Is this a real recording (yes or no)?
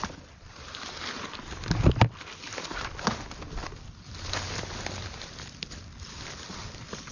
yes